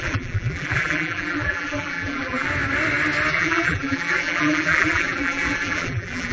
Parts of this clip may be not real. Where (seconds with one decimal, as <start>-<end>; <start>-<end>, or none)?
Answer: 0.0-2.5; 3.3-6.3

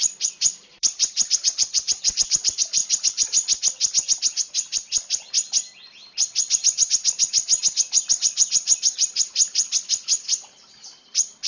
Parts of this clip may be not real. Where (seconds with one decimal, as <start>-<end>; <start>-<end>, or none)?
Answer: 0.0-2.8; 8.1-11.5

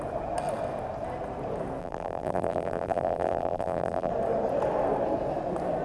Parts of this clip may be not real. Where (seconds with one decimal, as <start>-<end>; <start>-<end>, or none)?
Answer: 1.8-4.1

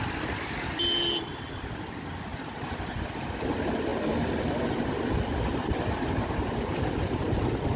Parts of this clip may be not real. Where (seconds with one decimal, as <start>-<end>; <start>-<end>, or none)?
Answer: 2.3-3.3

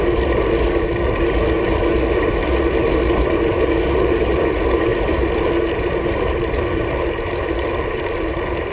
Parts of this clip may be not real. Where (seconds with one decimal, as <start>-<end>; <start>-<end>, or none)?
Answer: 4.9-8.2

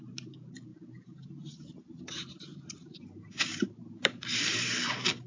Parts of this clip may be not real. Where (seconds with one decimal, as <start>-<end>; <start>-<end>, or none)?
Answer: 0.0-0.7; 2.0-5.3

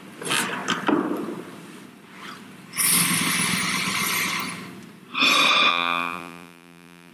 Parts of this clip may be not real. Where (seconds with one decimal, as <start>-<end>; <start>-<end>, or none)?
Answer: 5.7-7.1

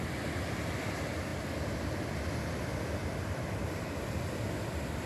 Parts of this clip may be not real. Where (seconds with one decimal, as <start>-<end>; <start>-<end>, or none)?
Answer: none